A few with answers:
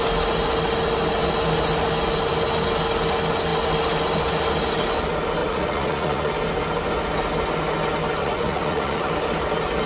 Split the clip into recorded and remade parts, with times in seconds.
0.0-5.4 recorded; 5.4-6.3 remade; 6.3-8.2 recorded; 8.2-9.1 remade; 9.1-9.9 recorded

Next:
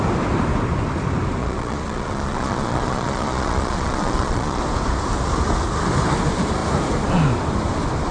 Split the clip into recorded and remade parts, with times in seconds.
0.0-1.4 recorded; 1.4-4.6 remade; 4.6-8.1 recorded

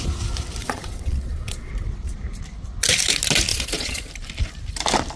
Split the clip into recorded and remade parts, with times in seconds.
0.0-0.6 recorded; 0.6-1.7 remade; 1.7-3.5 recorded; 3.5-4.1 remade; 4.1-5.2 recorded

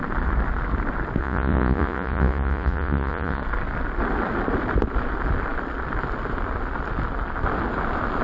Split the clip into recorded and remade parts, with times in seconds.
0.0-1.2 recorded; 1.2-3.4 remade; 3.4-8.2 recorded

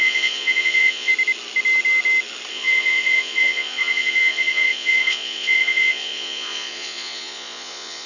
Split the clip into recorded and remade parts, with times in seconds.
0.0-1.1 remade; 1.1-2.5 recorded; 2.5-8.1 remade